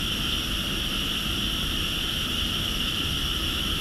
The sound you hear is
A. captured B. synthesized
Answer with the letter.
A